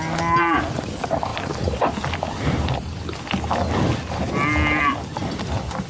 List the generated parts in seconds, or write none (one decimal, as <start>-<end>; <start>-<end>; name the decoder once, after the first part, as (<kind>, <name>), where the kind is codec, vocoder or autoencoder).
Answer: 5.2-5.9 (vocoder, BigVGAN v2)